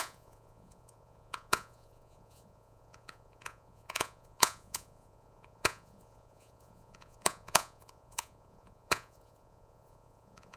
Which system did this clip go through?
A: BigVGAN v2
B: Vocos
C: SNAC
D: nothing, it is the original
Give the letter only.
B